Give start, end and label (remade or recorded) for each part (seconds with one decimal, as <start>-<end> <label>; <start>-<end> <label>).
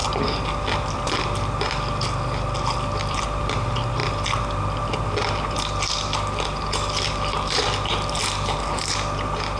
0.0-0.9 recorded; 0.9-9.6 remade